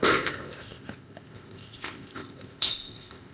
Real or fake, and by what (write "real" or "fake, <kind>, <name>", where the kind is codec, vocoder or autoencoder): fake, codec, ZipCodec